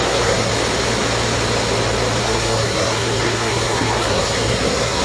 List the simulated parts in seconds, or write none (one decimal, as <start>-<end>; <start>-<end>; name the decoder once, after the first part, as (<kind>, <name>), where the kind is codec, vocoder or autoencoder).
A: 0.0-0.5 (codec, SNAC); 2.2-5.0